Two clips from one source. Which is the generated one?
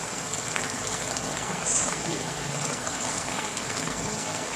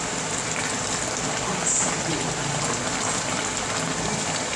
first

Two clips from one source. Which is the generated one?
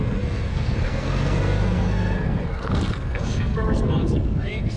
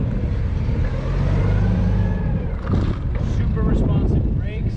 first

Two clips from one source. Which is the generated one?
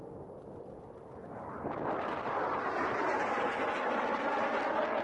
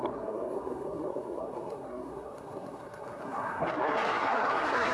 second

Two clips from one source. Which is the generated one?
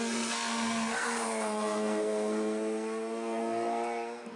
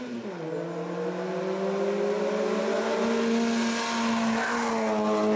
first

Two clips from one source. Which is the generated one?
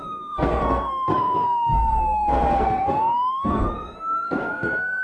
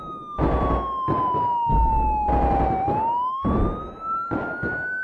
first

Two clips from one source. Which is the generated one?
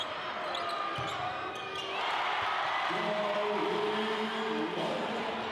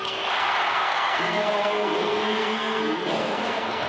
second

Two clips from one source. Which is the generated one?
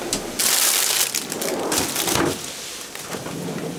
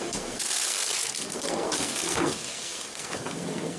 second